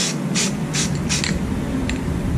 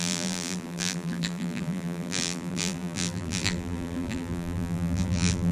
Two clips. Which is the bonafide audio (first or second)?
first